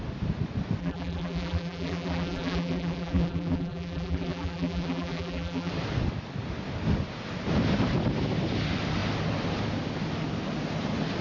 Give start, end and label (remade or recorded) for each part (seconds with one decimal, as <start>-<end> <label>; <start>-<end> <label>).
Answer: 0.0-0.8 recorded; 0.8-5.7 remade; 5.7-11.2 recorded